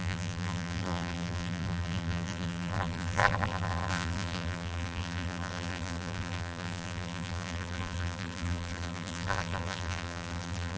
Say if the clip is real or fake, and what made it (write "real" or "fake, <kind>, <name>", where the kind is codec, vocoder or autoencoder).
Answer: fake, vocoder, BigVGAN v2